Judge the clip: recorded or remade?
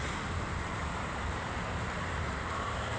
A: remade